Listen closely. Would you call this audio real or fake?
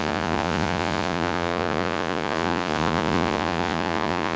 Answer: fake